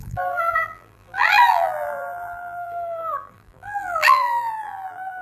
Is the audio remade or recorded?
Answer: remade